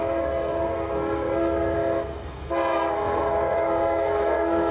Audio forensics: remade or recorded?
remade